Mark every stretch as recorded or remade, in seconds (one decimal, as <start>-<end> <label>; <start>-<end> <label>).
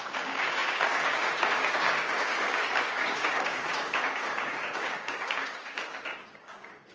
0.0-6.9 remade